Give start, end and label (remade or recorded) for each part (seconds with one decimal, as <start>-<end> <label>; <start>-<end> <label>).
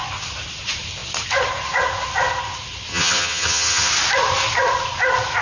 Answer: 0.0-2.9 recorded; 2.9-3.9 remade; 3.9-5.4 recorded